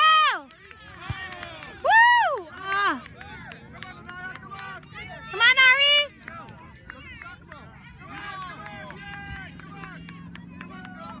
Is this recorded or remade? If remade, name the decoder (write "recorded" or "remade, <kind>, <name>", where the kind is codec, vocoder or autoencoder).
recorded